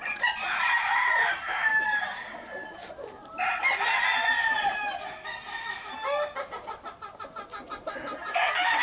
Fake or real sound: real